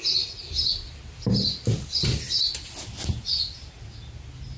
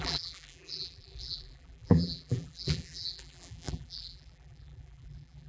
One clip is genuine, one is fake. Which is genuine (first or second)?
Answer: first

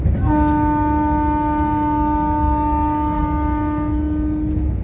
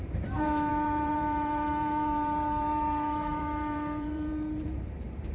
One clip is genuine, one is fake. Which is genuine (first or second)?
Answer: first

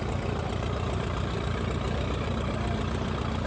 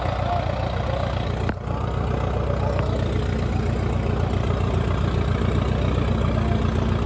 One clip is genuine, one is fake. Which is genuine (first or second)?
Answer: second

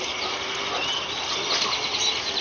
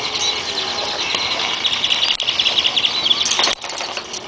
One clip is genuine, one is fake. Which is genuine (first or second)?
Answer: second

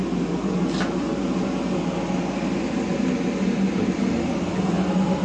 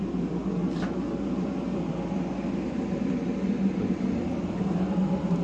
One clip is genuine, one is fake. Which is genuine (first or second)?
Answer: first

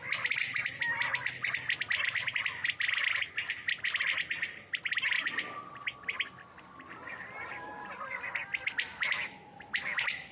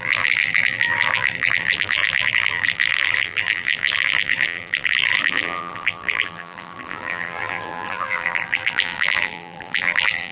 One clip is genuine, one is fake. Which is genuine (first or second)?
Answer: first